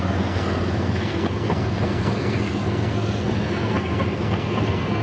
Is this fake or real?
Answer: fake